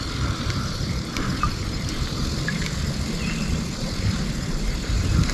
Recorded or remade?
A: recorded